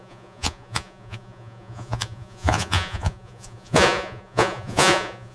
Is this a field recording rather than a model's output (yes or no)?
no